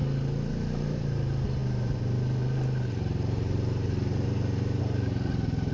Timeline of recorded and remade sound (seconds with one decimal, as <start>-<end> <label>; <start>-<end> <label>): 0.0-0.5 recorded; 0.5-5.7 remade